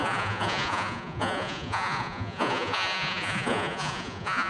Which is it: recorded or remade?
remade